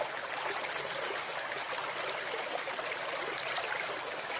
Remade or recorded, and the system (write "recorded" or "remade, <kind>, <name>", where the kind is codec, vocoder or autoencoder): recorded